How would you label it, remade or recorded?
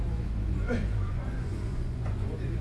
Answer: remade